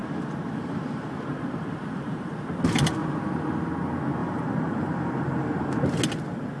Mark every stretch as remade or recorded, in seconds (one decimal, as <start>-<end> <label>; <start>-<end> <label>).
0.0-2.3 remade; 2.3-3.0 recorded; 3.0-3.7 remade; 3.7-4.2 recorded; 4.2-5.6 remade; 5.6-6.6 recorded